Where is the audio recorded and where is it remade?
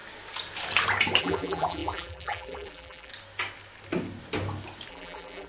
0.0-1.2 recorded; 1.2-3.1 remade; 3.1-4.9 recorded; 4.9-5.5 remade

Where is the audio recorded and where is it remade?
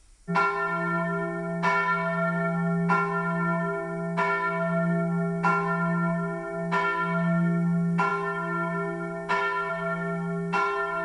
0.0-11.0 recorded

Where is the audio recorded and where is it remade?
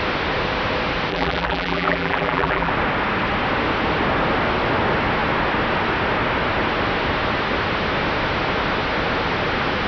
0.0-1.1 recorded; 1.1-2.7 remade; 2.7-9.9 recorded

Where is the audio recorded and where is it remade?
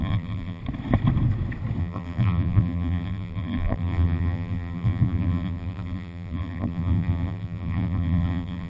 0.0-0.6 remade; 0.6-1.8 recorded; 1.8-8.7 remade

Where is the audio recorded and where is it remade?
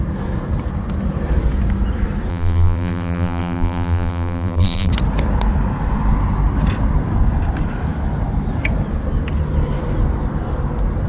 0.0-2.3 recorded; 2.3-4.9 remade; 4.9-11.1 recorded